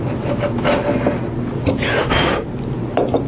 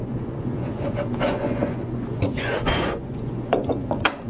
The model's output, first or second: second